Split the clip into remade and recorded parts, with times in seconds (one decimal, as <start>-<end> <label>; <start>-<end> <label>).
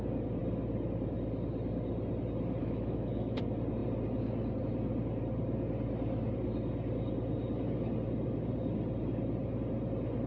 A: 0.0-2.6 recorded; 2.6-3.4 remade; 3.4-10.3 recorded